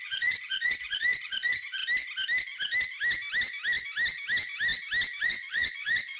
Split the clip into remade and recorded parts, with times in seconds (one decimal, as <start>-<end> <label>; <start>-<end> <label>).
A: 0.0-1.8 remade; 1.8-5.2 recorded; 5.2-6.2 remade